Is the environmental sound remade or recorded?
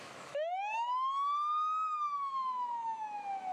remade